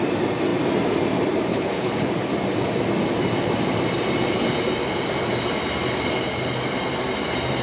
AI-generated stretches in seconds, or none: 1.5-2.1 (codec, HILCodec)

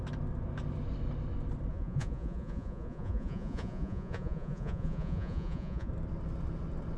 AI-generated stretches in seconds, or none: 1.7-5.9 (vocoder, Vocos)